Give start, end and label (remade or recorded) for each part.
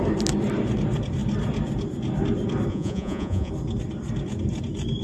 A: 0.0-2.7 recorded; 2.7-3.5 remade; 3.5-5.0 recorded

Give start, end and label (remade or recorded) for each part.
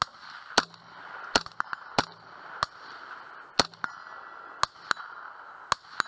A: 0.0-6.1 recorded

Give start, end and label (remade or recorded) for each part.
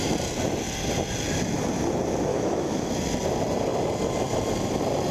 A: 0.0-2.3 recorded; 2.3-2.9 remade; 2.9-5.1 recorded